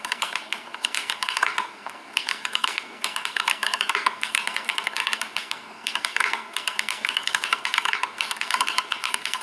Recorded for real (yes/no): no